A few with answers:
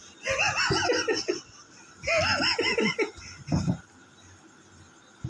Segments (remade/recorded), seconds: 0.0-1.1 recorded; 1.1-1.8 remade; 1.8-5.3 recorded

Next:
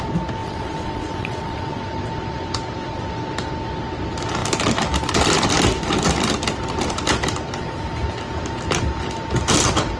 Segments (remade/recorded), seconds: 0.0-0.4 recorded; 0.4-1.8 remade; 1.8-10.0 recorded

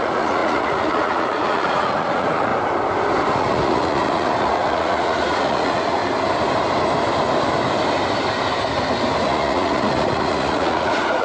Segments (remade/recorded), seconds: 0.0-2.5 remade; 2.5-3.3 recorded; 3.3-6.0 remade; 6.0-9.2 recorded; 9.2-11.2 remade